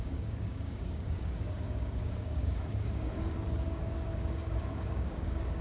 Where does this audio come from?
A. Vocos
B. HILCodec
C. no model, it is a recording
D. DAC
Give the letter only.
D